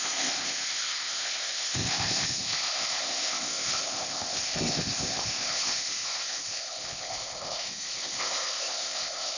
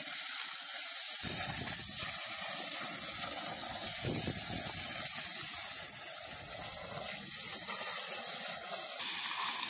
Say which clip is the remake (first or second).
first